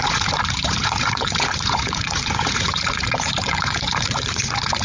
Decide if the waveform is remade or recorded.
remade